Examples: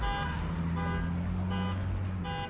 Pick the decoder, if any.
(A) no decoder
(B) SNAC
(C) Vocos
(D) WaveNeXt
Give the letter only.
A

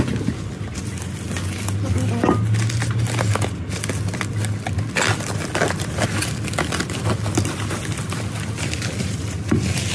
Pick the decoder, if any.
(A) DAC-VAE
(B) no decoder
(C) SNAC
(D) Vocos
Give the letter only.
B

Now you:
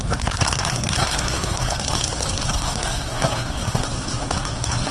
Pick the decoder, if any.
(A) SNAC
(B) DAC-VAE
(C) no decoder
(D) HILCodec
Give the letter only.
A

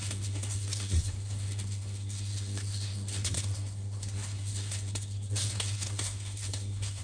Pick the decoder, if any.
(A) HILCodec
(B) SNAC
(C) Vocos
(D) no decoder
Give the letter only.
B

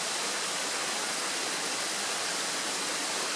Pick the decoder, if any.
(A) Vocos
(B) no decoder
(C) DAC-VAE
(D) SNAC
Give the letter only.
B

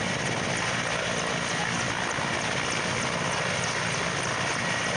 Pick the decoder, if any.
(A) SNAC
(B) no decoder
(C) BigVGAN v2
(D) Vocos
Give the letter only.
B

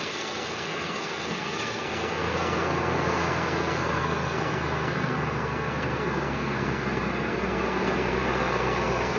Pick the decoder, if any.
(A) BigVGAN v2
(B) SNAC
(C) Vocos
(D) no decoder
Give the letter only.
B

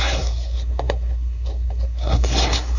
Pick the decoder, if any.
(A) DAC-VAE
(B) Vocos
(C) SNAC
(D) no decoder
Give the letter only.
C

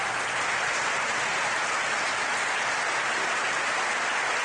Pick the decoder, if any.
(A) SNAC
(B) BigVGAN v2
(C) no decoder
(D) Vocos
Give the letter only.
C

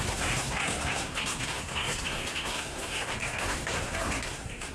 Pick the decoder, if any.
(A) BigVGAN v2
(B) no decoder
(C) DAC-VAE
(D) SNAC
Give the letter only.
D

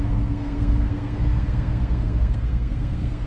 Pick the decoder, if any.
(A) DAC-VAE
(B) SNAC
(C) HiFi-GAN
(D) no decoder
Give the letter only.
B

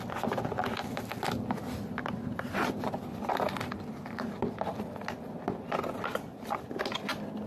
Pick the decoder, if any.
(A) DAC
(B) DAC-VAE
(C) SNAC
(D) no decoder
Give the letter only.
D